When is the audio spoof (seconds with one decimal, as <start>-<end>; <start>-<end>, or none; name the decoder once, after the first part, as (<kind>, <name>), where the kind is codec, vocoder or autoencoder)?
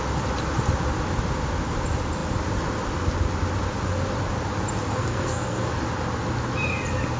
4.9-5.7 (codec, SNAC)